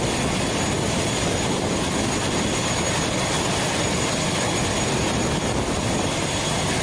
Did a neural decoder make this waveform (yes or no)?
no